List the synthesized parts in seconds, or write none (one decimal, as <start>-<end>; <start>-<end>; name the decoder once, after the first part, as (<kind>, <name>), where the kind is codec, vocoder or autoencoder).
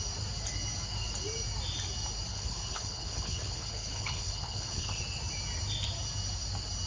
2.3-5.0 (codec, HILCodec)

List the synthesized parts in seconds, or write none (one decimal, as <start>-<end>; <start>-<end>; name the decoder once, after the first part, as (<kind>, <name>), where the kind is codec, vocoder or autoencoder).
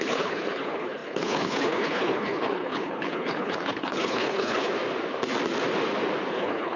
0.0-4.7 (codec, HILCodec); 6.3-6.8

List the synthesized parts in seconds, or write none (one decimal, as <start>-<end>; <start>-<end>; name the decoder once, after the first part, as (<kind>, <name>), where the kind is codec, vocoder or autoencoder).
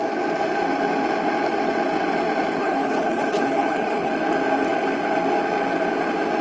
2.6-4.1 (codec, HILCodec)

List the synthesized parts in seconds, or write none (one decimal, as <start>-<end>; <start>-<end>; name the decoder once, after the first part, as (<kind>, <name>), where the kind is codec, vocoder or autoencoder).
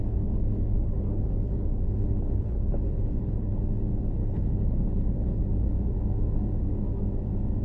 0.0-3.6 (codec, HILCodec); 4.2-5.4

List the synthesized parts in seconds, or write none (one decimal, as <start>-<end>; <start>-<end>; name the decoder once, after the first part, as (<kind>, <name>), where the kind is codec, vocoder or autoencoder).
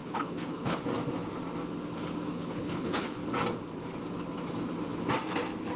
0.0-0.8 (codec, HILCodec); 2.3-3.2